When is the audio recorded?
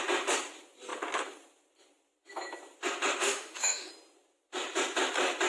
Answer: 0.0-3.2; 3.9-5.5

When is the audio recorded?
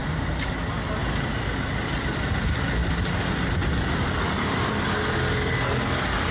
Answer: 0.5-1.0; 1.6-6.3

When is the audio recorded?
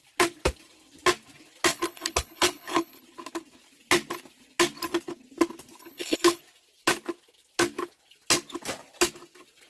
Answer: 0.0-1.7; 3.0-5.8; 6.4-9.7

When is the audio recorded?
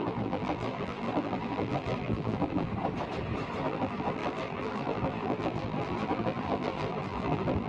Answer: 2.7-3.6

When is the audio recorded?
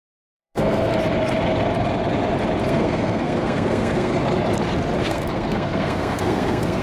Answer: 0.9-2.6; 4.1-5.0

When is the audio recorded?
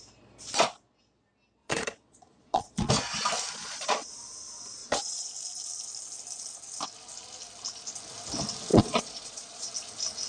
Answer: 0.0-1.6; 2.9-3.6; 4.1-4.8; 5.3-8.7; 9.7-10.3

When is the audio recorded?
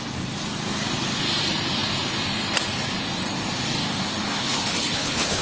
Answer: 0.0-4.3